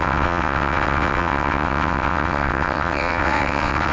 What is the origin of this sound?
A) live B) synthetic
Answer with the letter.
B